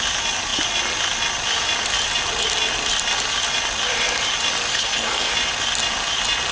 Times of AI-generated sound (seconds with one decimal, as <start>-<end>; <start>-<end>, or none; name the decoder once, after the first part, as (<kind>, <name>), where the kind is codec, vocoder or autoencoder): 4.7-5.3 (codec, SNAC)